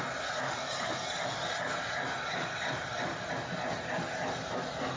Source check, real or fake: real